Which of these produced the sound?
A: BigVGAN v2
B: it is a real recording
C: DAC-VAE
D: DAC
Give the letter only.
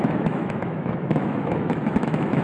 C